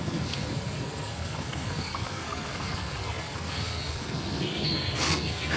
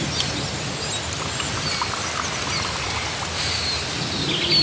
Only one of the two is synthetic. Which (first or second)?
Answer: first